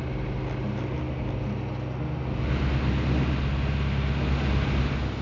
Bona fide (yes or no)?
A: yes